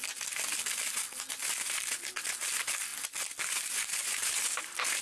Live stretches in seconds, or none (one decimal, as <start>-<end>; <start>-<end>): 0.0-5.0